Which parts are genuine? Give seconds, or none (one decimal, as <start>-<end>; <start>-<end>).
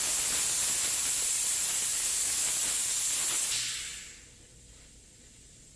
0.0-1.9; 2.5-5.8